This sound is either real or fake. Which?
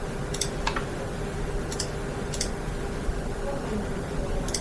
real